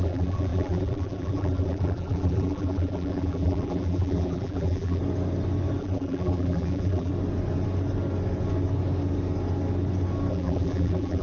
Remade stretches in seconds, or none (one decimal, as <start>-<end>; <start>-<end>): 0.0-5.0; 5.8-7.1; 10.3-11.2